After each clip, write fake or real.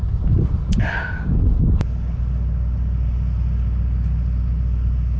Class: real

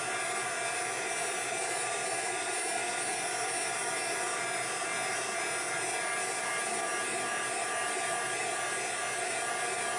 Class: real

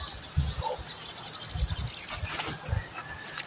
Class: real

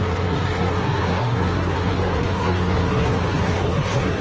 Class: fake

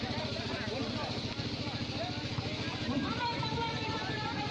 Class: real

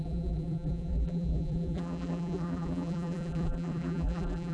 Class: fake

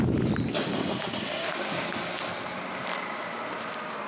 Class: real